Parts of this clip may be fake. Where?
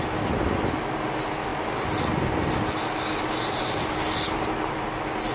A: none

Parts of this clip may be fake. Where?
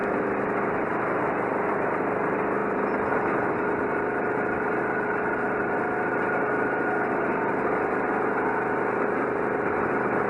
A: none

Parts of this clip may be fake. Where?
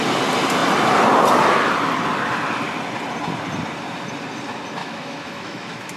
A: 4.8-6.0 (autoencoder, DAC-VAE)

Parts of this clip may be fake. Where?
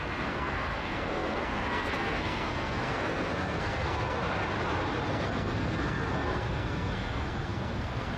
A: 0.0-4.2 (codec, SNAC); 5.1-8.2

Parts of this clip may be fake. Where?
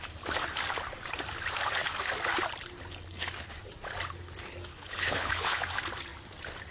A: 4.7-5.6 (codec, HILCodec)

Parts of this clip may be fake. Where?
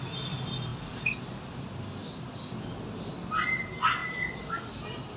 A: 0.7-2.5 (vocoder, BigVGAN v2)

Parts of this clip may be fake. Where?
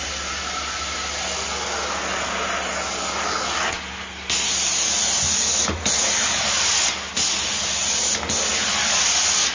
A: none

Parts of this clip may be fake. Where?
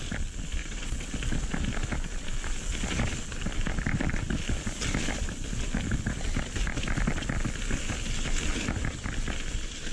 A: 0.6-1.1 (vocoder, WaveNeXt)